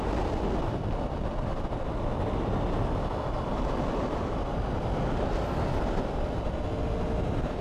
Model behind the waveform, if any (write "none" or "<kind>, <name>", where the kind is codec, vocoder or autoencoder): none